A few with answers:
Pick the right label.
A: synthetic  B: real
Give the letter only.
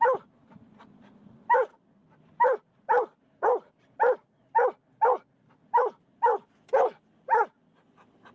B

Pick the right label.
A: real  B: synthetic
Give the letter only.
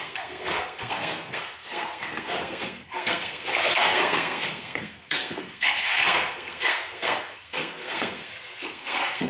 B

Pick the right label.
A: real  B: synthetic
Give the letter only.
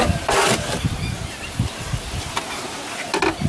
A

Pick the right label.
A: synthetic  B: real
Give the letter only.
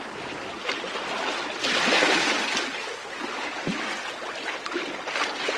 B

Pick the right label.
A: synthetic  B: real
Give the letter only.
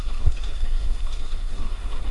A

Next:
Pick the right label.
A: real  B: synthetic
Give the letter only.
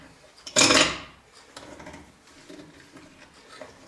A